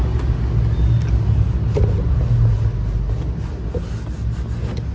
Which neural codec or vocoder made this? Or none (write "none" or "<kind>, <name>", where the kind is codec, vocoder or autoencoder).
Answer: none